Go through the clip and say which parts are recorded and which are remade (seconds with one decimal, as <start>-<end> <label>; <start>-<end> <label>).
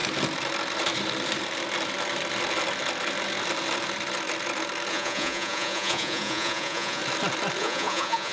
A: 0.0-4.9 recorded; 4.9-7.0 remade; 7.0-7.6 recorded; 7.6-8.3 remade